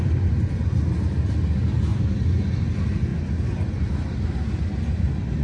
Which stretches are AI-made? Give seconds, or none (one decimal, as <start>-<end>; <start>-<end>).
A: none